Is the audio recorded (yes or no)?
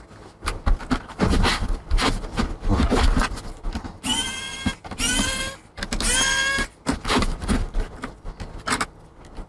yes